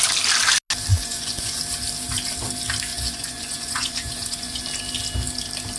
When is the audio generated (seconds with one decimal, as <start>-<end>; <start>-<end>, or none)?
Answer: 0.9-1.6; 2.9-4.6